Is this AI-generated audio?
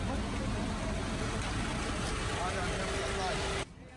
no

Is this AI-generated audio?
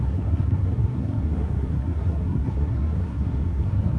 yes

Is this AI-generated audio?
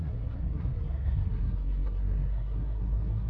yes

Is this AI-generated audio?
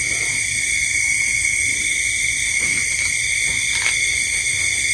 no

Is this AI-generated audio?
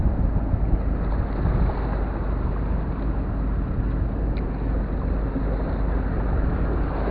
no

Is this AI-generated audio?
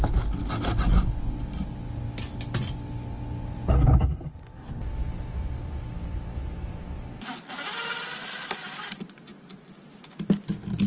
no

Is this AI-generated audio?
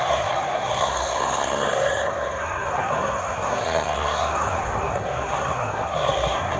yes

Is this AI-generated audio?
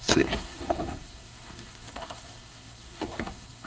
yes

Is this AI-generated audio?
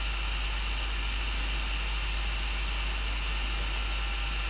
no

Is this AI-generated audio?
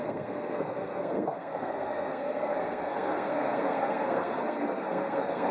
yes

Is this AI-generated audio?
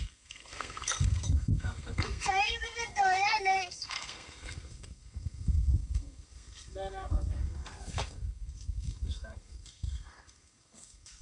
yes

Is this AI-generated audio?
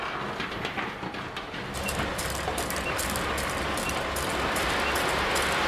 no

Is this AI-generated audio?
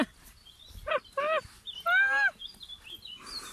no